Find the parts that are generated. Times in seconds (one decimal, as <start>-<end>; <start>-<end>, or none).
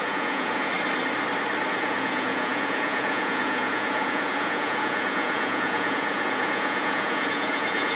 0.0-0.7; 1.7-8.0